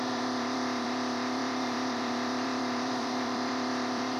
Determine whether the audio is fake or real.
fake